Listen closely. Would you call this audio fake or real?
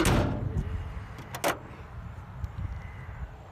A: real